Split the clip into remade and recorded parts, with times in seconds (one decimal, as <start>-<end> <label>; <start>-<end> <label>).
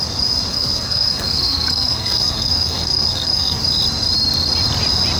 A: 0.0-0.5 recorded; 0.5-3.6 remade; 3.6-5.2 recorded